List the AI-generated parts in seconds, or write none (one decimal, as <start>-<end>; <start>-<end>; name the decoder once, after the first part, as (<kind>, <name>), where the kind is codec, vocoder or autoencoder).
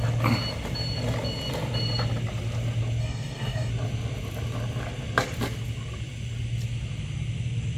3.0-3.7 (codec, DAC)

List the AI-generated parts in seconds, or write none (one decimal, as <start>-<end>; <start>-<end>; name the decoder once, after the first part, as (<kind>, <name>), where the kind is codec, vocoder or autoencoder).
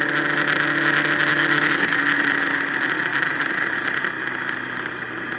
1.3-2.0 (codec, DAC)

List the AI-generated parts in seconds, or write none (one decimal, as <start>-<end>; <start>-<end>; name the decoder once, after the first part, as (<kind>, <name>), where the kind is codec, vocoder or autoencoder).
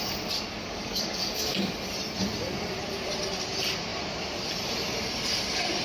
0.6-1.7 (codec, DAC)